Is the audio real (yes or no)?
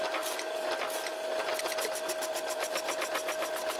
yes